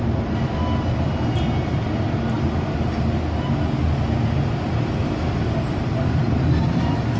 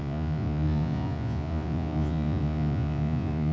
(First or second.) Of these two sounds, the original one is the first